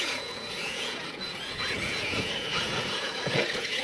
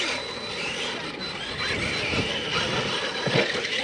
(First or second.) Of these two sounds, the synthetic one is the first